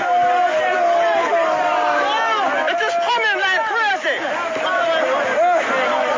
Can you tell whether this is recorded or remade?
recorded